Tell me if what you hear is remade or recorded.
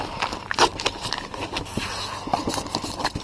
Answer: recorded